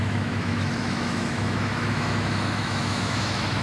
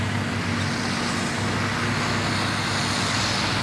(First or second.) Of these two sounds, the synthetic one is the first